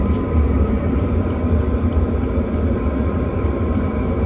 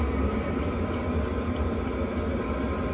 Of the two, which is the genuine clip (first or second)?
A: second